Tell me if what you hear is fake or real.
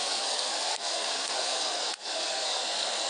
fake